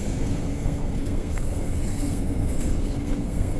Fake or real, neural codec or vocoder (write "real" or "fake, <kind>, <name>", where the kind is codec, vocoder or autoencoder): fake, codec, SNAC